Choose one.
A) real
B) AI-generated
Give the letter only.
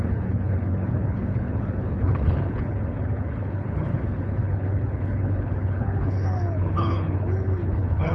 B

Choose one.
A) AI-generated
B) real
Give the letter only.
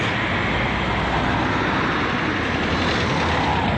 B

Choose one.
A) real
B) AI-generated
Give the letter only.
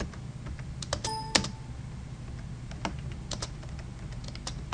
A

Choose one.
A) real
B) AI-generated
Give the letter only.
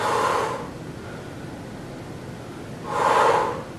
A